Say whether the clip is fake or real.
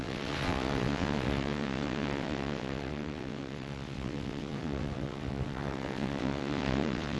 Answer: fake